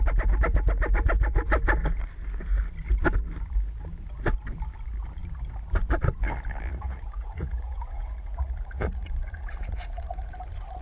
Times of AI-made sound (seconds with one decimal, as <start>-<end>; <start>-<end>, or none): 6.7-10.3